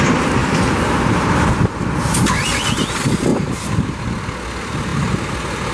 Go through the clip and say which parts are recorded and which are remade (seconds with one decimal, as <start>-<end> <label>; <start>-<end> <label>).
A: 0.0-0.4 recorded; 0.4-2.2 remade; 2.2-3.3 recorded; 3.3-4.0 remade; 4.0-5.7 recorded